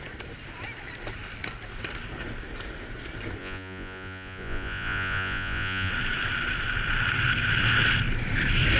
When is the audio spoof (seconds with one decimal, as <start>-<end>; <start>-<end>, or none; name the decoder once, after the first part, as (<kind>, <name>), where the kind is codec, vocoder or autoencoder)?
3.4-5.9 (vocoder, Vocos)